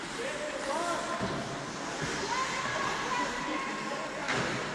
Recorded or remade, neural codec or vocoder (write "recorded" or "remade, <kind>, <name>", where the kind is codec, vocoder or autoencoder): recorded